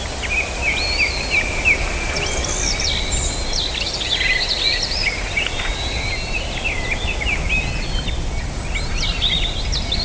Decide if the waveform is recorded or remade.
recorded